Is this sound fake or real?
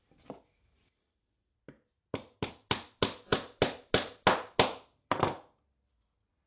real